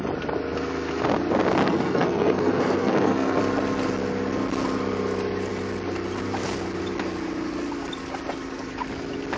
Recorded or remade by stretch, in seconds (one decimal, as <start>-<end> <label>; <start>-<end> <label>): 0.0-1.6 recorded; 1.6-3.4 remade; 3.4-9.4 recorded